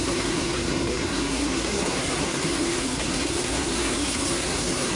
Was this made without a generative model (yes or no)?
no